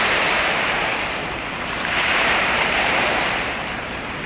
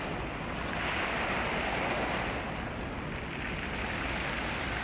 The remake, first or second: first